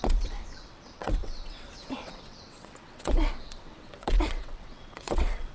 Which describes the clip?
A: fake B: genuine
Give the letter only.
A